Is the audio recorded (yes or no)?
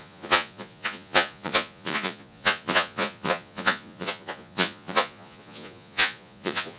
no